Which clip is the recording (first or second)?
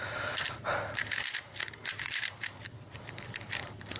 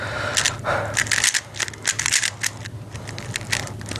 second